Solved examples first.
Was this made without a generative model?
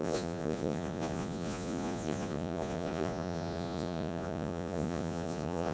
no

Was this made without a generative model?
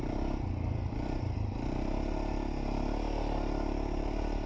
yes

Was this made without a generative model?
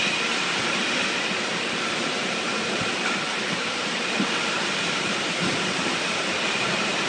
no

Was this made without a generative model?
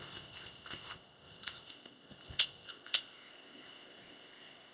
no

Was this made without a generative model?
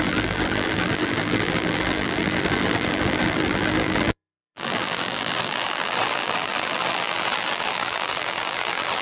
no